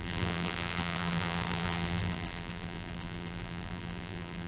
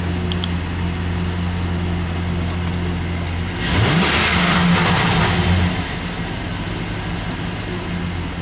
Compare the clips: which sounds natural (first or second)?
second